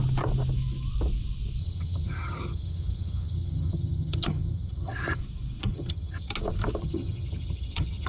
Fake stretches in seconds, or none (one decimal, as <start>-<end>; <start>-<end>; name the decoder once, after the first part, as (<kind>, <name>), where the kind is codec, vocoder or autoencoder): 1.6-5.2 (vocoder, HiFi-GAN); 5.7-6.3; 6.8-8.1